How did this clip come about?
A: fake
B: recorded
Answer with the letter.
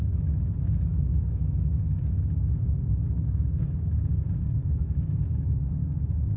A